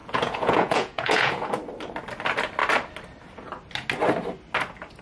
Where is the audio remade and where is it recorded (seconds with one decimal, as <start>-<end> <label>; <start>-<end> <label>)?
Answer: 0.0-1.5 remade; 1.5-5.0 recorded